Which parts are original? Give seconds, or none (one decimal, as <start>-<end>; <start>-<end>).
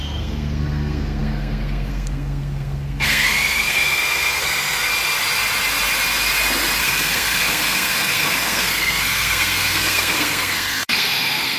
4.9-6.8